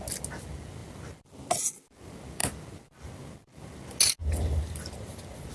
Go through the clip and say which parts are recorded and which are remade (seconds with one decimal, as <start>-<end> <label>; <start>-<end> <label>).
0.0-5.5 recorded